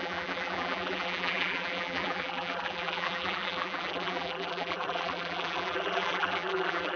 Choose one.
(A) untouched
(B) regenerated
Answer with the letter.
B